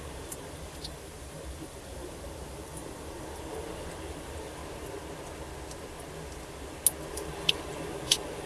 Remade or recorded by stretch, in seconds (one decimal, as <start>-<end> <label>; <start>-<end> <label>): 0.0-4.6 remade; 4.6-7.1 recorded; 7.1-8.5 remade